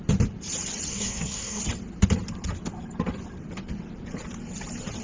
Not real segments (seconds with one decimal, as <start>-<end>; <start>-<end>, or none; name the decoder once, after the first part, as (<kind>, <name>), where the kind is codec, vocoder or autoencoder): 0.9-1.6 (codec, SNAC)

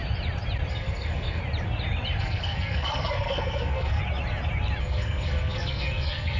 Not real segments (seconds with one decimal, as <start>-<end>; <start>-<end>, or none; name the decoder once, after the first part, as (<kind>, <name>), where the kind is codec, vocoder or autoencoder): 0.7-1.4 (codec, SNAC); 2.2-4.0; 4.8-6.4

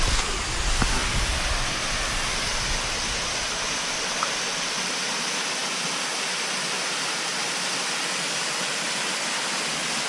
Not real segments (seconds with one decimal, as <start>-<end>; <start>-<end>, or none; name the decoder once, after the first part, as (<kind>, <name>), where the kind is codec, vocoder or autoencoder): none

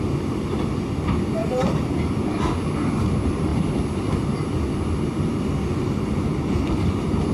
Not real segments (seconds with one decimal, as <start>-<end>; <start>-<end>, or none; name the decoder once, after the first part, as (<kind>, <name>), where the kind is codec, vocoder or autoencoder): none

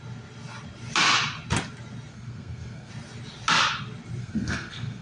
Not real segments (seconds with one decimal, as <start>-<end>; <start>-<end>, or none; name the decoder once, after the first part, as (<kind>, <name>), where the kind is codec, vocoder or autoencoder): 2.1-2.9 (codec, SNAC); 4.2-5.0

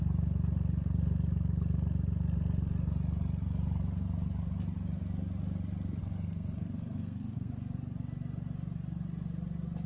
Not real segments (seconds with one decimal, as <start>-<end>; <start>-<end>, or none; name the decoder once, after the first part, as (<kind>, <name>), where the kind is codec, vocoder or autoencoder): 6.0-7.5 (codec, SNAC)

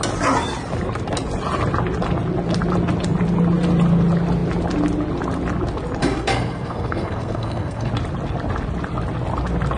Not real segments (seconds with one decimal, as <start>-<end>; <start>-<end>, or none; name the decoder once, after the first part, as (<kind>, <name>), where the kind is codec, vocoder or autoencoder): 6.0-7.9 (codec, SNAC)